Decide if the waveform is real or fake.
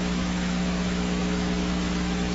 fake